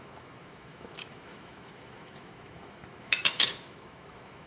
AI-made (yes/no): yes